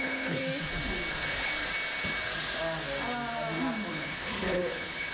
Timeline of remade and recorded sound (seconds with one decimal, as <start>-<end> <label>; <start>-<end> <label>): 0.0-0.4 remade; 0.4-1.1 recorded; 1.1-1.5 remade; 1.5-3.9 recorded; 3.9-5.1 remade